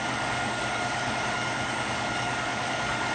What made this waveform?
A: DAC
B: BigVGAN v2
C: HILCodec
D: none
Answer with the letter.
A